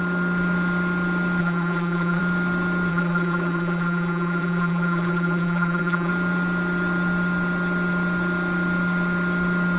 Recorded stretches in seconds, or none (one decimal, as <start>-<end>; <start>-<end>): 0.0-1.4; 2.2-2.9; 6.1-9.8